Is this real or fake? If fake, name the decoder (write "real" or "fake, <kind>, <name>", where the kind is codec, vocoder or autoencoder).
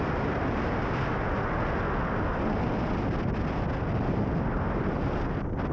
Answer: real